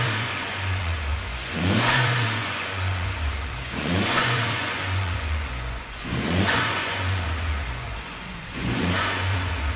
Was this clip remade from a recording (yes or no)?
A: yes